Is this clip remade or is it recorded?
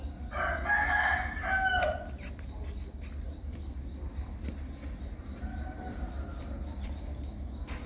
recorded